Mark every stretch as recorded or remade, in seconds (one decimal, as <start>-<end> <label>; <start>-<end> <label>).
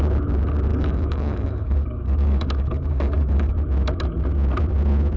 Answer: 0.0-0.7 recorded; 0.7-3.5 remade; 3.5-5.2 recorded